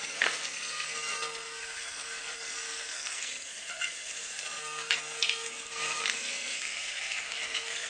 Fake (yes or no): yes